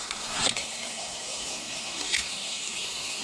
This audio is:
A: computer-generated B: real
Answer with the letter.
A